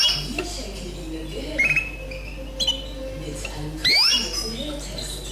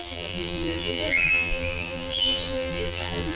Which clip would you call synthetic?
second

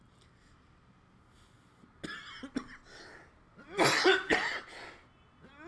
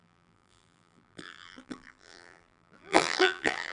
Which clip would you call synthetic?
second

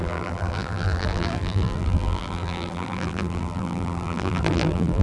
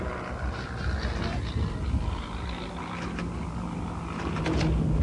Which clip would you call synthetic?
first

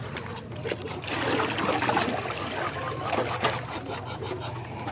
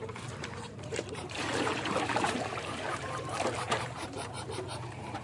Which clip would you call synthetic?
second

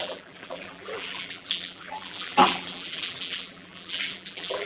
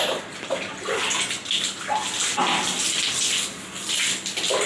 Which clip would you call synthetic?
first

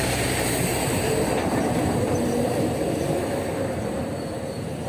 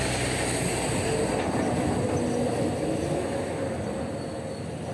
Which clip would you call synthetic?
first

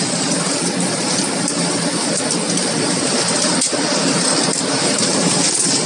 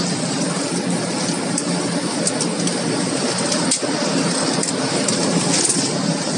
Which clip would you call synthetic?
first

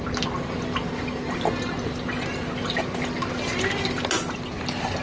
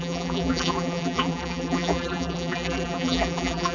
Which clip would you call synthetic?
second